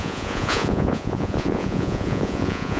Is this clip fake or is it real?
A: fake